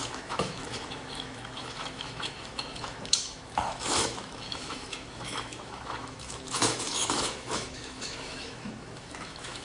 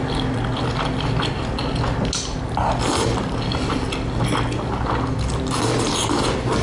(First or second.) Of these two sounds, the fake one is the first